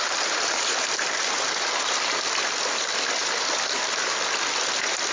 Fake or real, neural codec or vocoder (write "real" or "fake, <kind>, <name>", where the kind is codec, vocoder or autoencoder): real